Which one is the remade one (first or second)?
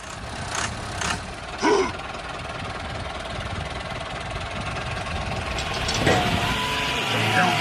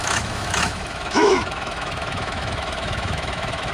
second